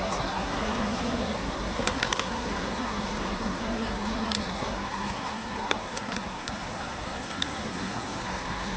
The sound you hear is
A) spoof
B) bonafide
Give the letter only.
A